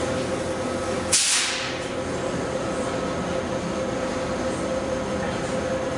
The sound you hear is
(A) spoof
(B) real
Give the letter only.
B